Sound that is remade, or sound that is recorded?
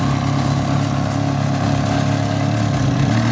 recorded